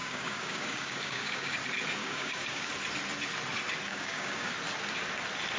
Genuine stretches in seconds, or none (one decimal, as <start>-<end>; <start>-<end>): 1.6-2.0; 2.7-3.9; 4.5-5.6